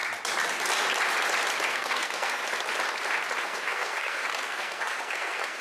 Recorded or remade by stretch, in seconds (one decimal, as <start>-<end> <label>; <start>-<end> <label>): 0.0-1.7 recorded; 1.7-2.4 remade; 2.4-3.4 recorded; 3.4-5.6 remade